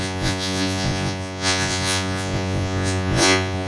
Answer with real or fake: fake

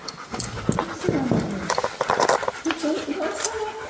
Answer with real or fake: real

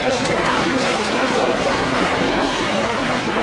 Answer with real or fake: fake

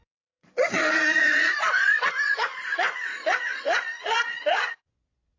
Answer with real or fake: fake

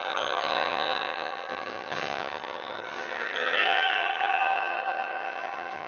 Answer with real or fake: fake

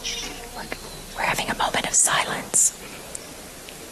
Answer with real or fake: real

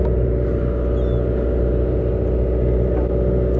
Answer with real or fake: real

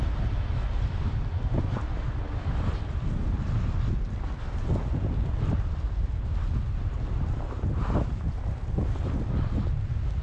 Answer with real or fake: real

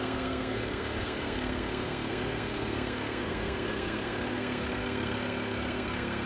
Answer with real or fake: fake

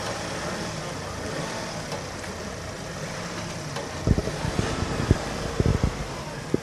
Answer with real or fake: real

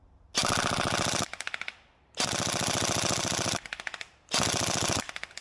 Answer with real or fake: real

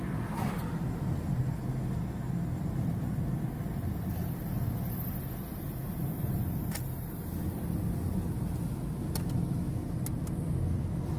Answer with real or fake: real